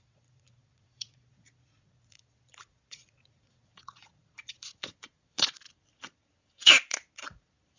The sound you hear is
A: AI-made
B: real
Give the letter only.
A